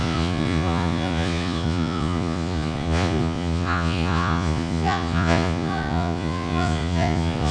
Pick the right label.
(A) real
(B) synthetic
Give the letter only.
B